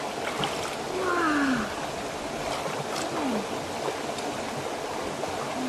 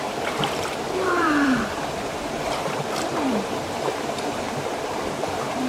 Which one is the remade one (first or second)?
second